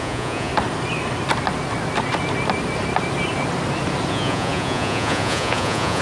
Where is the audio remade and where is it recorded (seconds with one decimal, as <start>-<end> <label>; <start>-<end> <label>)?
0.0-0.5 remade; 0.5-4.1 recorded; 4.1-6.0 remade